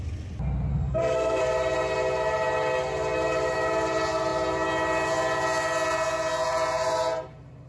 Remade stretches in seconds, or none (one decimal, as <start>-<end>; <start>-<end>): 0.7-1.4